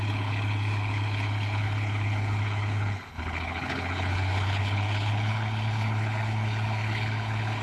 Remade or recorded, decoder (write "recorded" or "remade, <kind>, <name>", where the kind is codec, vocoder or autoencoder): remade, codec, HILCodec